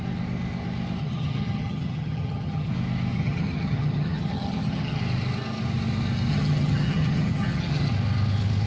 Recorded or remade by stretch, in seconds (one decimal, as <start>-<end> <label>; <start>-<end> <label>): 0.0-1.0 recorded; 1.0-2.7 remade; 2.7-3.1 recorded; 3.1-5.0 remade; 5.0-6.3 recorded; 6.3-7.9 remade; 7.9-8.7 recorded